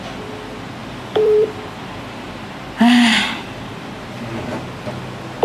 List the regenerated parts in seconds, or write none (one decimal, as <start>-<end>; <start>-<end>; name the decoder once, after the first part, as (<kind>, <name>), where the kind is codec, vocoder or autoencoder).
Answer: 0.8-4.0 (vocoder, BigVGAN v2)